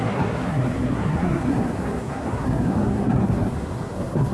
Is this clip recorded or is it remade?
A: remade